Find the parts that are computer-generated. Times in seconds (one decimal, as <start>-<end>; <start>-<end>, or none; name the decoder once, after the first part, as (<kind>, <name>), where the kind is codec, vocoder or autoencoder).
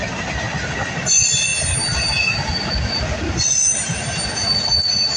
none